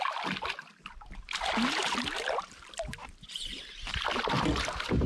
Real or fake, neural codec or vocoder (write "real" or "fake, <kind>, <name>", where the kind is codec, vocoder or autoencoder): real